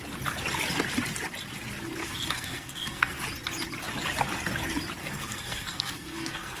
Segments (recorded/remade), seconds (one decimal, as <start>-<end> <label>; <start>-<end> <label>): 0.0-2.0 recorded; 2.0-3.2 remade; 3.2-5.0 recorded; 5.0-6.6 remade